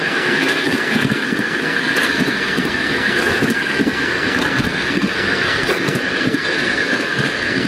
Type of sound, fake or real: fake